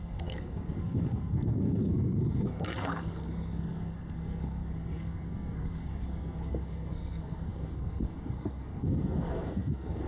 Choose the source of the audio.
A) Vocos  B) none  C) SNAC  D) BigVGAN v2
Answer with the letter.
C